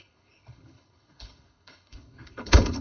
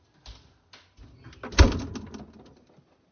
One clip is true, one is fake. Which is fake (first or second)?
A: first